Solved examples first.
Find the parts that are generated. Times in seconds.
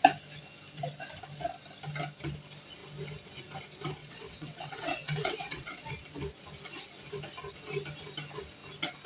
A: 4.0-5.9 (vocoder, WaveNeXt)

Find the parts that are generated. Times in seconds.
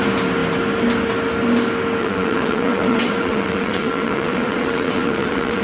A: 2.0-5.6 (vocoder, WaveNeXt)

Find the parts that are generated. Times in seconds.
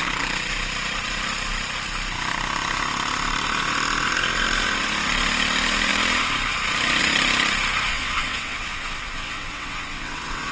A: 7.9-10.5 (vocoder, WaveNeXt)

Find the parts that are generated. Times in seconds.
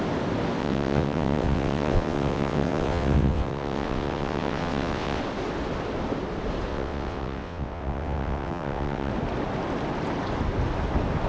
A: 0.6-5.2 (vocoder, WaveNeXt); 6.7-9.1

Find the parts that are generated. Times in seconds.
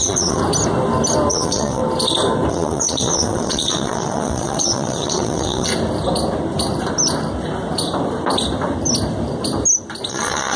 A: 0.0-0.4 (vocoder, WaveNeXt); 1.3-1.8; 2.5-5.7; 10.1-10.6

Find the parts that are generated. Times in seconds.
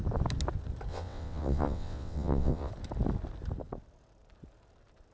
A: 0.9-2.7 (vocoder, WaveNeXt)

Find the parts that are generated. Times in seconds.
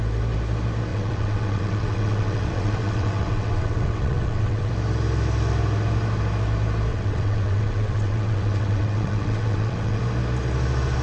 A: 0.9-4.7 (vocoder, WaveNeXt); 6.9-10.0